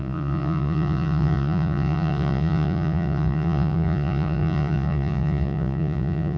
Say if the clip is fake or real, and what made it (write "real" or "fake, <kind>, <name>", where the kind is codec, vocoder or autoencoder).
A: fake, vocoder, Vocos